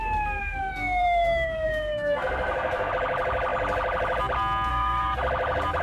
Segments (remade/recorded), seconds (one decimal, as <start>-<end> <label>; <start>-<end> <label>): 0.0-0.4 recorded; 0.4-2.9 remade; 2.9-4.7 recorded; 4.7-5.2 remade; 5.2-5.8 recorded

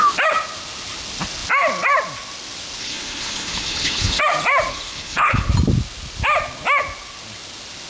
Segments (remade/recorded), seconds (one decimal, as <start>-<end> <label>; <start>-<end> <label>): 0.0-2.8 recorded; 2.8-4.2 remade; 4.2-4.7 recorded; 4.7-5.5 remade; 5.5-7.9 recorded

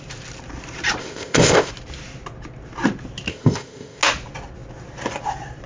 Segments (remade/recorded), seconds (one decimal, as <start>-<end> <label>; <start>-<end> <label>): 0.0-1.0 recorded; 1.0-1.7 remade; 1.7-3.3 recorded; 3.3-4.0 remade; 4.0-5.7 recorded

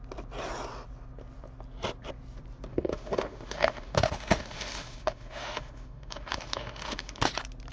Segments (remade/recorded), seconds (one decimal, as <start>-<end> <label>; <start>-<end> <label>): 0.0-2.7 recorded; 2.7-7.3 remade; 7.3-7.7 recorded

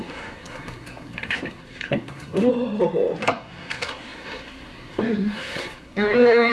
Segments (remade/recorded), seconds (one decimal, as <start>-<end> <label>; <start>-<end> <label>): 0.0-2.5 remade; 2.5-3.2 recorded; 3.2-6.5 remade

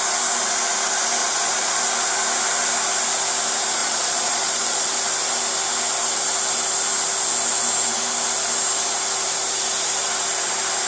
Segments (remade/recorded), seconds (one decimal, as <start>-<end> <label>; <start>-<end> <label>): 0.0-1.2 recorded; 1.2-1.8 remade; 1.8-3.8 recorded; 3.8-4.9 remade; 4.9-10.9 recorded

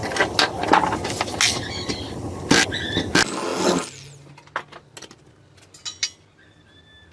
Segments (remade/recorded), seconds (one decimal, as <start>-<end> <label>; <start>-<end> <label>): 0.0-7.1 recorded

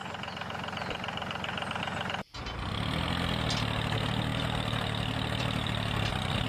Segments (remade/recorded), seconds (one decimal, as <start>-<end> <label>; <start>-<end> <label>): 0.0-1.8 remade; 1.8-4.3 recorded; 4.3-6.0 remade; 6.0-6.5 recorded